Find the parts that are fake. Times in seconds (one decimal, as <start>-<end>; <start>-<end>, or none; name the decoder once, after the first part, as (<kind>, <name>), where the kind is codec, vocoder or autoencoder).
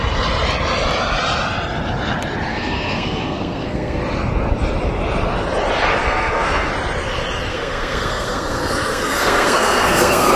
2.5-4.0 (codec, SNAC); 6.0-6.7; 7.5-10.4